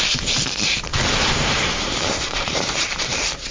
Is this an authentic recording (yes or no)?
no